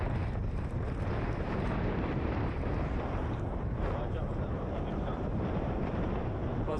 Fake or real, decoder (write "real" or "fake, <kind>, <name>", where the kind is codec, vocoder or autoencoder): fake, vocoder, BigVGAN v2